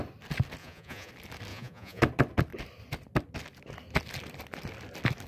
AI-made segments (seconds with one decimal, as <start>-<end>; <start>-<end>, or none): 0.6-1.1; 1.5-2.0